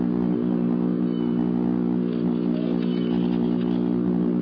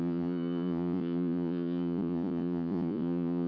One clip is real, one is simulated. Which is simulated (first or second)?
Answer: second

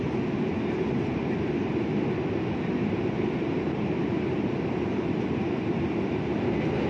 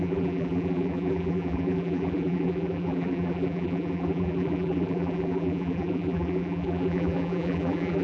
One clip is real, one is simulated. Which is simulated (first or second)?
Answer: second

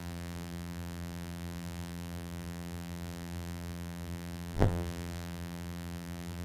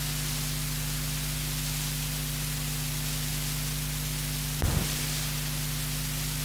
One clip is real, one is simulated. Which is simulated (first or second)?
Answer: first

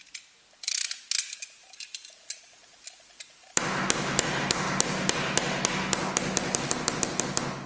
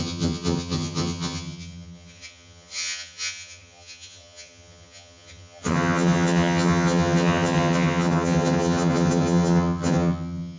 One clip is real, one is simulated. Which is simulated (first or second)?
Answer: second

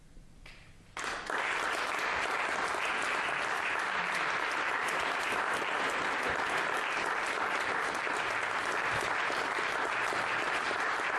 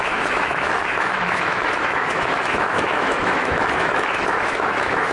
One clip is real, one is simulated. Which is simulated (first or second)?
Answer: second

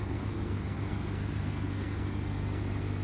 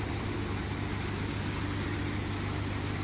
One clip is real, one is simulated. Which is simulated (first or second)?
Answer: first